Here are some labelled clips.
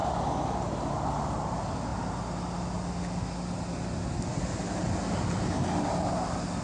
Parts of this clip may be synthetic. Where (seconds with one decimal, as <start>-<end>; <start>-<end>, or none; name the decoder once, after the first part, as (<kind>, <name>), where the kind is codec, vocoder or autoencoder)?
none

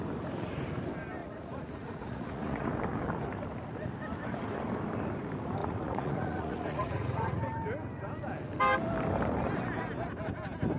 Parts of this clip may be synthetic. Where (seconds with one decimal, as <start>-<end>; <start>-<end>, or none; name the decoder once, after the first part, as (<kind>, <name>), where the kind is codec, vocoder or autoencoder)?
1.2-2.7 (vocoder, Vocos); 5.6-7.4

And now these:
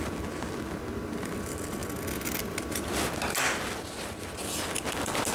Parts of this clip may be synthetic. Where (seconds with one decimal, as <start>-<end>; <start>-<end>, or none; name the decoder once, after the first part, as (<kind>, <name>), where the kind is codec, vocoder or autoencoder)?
none